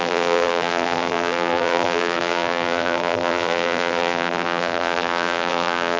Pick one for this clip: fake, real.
fake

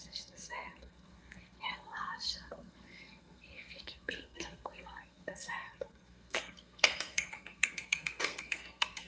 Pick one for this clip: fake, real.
fake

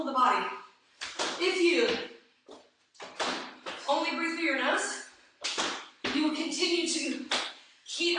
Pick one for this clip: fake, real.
real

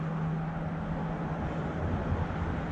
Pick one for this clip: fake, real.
real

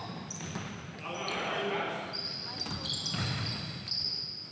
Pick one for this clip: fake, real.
real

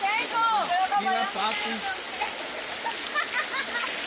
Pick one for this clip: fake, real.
real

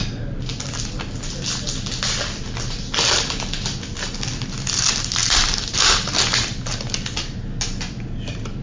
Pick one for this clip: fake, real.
real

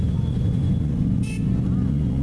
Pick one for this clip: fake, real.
fake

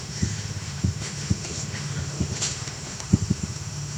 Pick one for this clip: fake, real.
fake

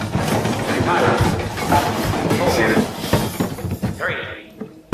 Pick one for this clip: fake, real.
fake